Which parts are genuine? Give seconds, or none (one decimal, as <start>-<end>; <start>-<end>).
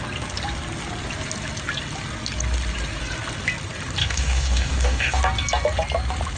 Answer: 0.0-4.0; 5.2-6.4